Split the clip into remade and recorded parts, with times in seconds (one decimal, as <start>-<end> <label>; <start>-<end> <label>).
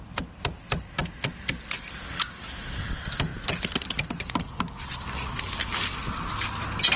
0.0-7.0 recorded